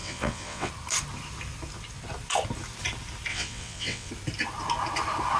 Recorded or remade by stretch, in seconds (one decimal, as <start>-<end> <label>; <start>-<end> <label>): 0.0-0.7 remade; 0.7-3.3 recorded; 3.3-4.1 remade; 4.1-5.4 recorded